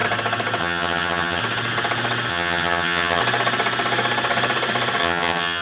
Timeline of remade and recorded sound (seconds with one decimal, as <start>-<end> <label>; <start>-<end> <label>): 0.0-0.6 recorded; 0.6-1.4 remade; 1.4-2.3 recorded; 2.3-3.2 remade; 3.2-5.0 recorded; 5.0-5.6 remade